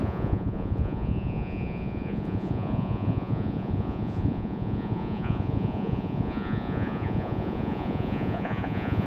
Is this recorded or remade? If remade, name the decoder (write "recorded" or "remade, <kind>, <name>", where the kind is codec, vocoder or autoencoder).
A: remade, vocoder, Vocos